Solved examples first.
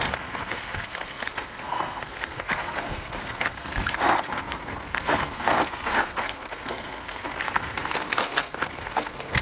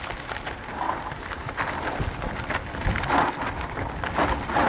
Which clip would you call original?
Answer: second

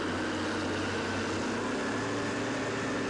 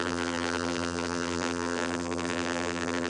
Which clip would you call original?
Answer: first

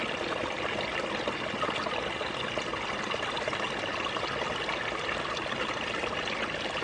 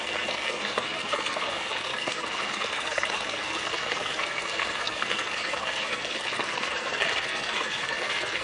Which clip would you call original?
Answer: first